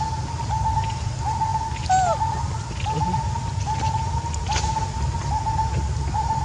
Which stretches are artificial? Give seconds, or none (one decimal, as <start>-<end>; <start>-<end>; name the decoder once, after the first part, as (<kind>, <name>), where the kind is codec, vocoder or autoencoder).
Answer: none